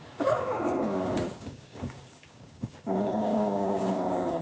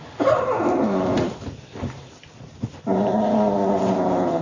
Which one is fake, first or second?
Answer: first